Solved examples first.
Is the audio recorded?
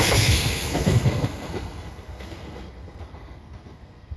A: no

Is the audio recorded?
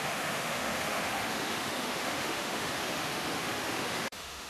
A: no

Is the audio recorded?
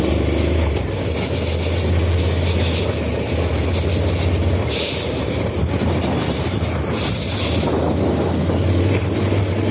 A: yes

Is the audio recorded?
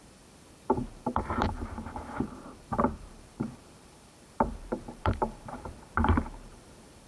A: no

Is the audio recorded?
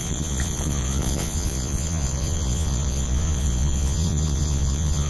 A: no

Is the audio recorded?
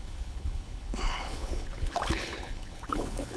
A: no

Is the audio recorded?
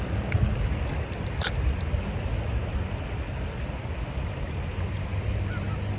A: yes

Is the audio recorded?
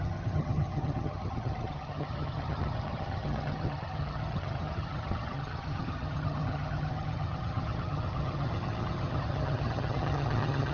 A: no